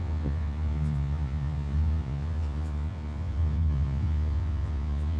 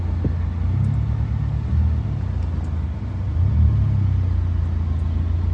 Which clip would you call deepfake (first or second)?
first